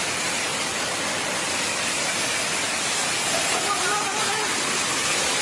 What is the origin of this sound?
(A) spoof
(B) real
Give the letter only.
B